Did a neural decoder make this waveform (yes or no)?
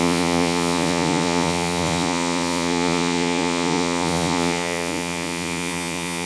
yes